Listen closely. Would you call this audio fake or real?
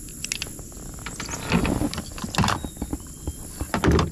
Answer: real